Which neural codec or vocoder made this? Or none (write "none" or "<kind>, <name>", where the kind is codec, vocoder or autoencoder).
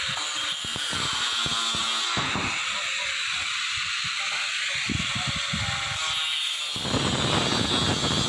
none